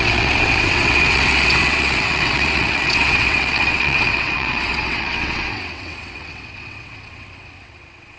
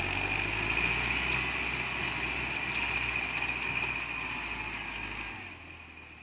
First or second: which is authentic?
second